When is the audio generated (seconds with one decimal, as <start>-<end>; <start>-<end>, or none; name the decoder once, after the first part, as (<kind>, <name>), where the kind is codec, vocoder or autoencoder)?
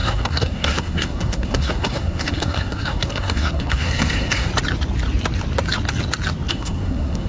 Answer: 0.0-4.5 (codec, SNAC); 6.5-7.3